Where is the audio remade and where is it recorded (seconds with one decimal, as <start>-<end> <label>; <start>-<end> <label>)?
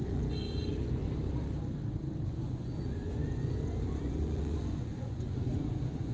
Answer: 0.0-1.0 remade; 1.0-2.3 recorded; 2.3-6.1 remade